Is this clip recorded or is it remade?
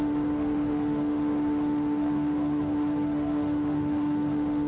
remade